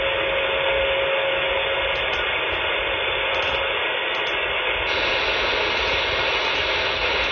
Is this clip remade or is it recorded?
recorded